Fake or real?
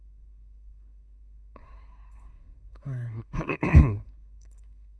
fake